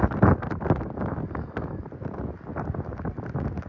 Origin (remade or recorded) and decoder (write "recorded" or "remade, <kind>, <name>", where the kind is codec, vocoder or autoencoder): recorded